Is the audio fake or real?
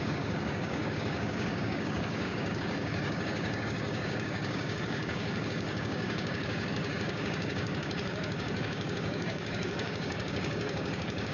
fake